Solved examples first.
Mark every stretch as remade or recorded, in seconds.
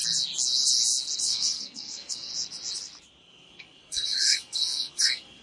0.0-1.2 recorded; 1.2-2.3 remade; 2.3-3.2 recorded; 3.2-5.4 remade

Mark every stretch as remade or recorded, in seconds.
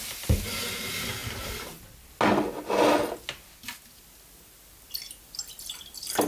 0.0-6.3 recorded